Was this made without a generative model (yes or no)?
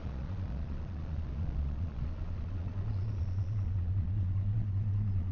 no